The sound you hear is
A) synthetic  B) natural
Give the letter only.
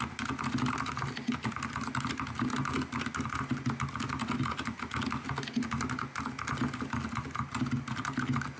B